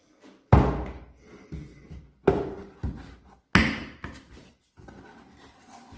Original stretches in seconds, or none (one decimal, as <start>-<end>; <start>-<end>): 0.0-6.0